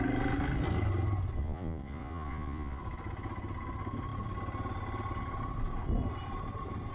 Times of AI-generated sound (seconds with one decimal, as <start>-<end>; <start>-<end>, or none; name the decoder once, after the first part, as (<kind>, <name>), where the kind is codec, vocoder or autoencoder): 1.4-2.8 (vocoder, Vocos)